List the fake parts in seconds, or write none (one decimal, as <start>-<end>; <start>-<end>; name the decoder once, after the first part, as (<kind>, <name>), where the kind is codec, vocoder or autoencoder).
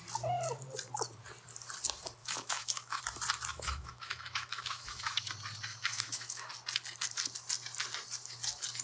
2.2-3.0 (autoencoder, DAC-VAE); 3.5-5.3; 5.7-6.5